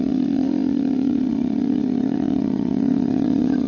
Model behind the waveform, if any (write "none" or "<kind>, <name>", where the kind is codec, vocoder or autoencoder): vocoder, Vocos